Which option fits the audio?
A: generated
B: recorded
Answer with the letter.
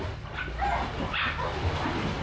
B